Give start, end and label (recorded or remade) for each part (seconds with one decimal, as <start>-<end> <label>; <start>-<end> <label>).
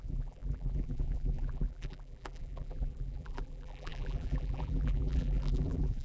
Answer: 0.0-6.0 remade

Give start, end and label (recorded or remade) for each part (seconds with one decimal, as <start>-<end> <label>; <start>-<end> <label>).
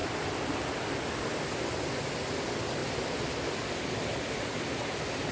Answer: 0.0-5.3 recorded